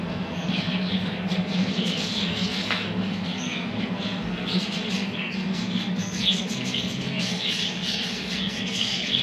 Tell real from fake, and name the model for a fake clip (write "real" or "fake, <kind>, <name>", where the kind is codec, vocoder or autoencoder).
fake, codec, SNAC